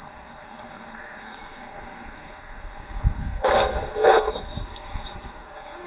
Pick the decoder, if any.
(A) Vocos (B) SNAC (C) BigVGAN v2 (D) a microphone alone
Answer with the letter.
B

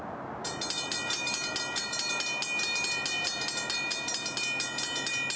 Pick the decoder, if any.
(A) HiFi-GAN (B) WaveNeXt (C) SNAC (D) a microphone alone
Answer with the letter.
D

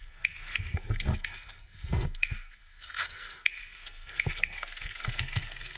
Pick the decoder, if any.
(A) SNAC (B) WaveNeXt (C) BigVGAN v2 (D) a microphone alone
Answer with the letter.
A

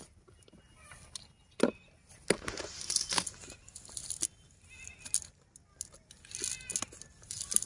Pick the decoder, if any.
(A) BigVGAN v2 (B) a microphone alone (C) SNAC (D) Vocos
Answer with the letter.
B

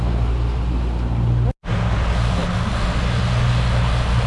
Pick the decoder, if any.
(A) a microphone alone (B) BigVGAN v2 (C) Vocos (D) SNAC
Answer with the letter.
A